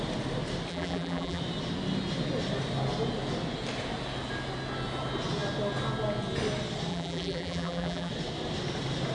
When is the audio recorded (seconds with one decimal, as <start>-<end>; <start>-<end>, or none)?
0.0-0.7; 1.4-6.9; 8.1-9.1